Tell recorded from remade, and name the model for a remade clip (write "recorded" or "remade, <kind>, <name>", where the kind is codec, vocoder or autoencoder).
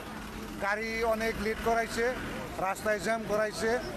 recorded